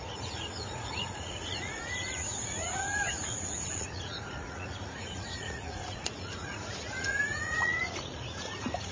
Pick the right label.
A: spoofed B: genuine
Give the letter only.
A